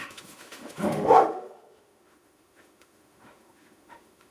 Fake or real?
fake